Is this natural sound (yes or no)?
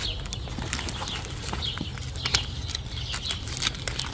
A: yes